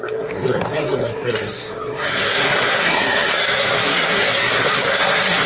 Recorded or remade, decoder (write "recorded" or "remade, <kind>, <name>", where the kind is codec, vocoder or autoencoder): remade, codec, SNAC